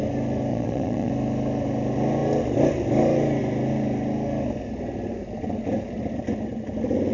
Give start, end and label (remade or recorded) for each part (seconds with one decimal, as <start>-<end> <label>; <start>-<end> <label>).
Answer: 0.0-0.5 recorded; 0.5-1.1 remade; 1.1-7.1 recorded